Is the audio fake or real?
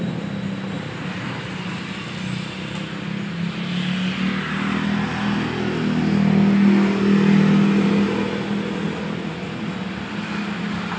real